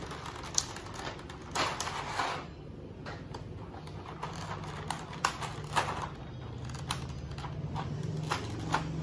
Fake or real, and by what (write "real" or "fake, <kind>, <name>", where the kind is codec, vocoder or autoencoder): real